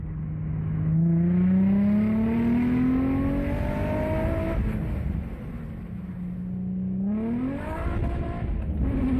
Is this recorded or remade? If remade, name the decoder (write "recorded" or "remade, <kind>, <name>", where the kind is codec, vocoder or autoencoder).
recorded